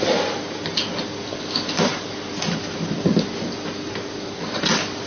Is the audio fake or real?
real